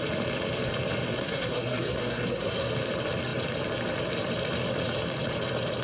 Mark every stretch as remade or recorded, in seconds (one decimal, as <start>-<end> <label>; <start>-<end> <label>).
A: 0.0-1.2 recorded; 1.2-2.7 remade; 2.7-5.8 recorded

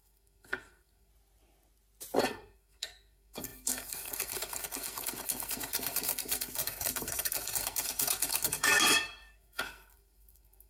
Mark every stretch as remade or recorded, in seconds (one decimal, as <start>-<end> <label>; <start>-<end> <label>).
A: 0.0-1.1 remade; 1.1-2.2 recorded; 2.2-10.7 remade

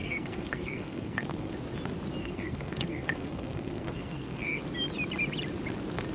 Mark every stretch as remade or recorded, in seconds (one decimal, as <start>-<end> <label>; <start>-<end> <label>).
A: 0.0-1.5 remade; 1.5-2.2 recorded; 2.2-4.6 remade; 4.6-6.1 recorded

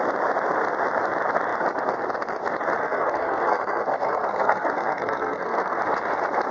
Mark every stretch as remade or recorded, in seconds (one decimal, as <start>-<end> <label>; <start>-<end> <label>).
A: 0.0-2.8 recorded; 2.8-5.8 remade; 5.8-6.5 recorded

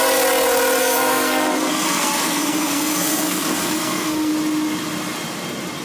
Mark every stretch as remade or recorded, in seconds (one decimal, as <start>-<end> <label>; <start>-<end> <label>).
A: 0.0-0.8 recorded; 0.8-4.3 remade; 4.3-5.8 recorded